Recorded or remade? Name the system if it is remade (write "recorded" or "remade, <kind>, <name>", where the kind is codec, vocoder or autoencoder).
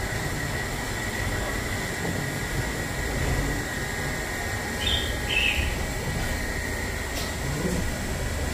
remade, vocoder, BigVGAN v2